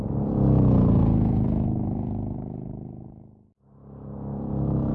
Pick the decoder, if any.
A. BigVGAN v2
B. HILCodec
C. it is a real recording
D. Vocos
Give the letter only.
C